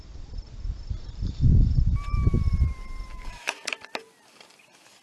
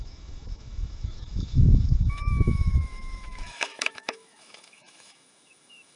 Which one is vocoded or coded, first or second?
second